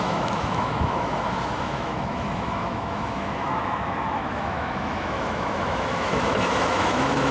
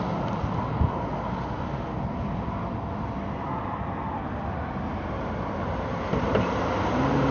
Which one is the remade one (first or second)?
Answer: first